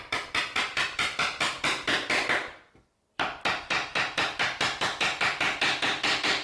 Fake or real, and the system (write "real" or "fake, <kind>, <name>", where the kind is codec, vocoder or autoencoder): fake, vocoder, BigVGAN v2